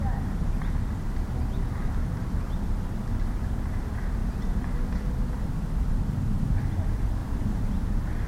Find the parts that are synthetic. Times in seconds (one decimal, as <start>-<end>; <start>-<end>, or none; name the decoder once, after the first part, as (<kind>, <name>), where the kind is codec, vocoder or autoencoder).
7.2-7.7 (vocoder, BigVGAN v2)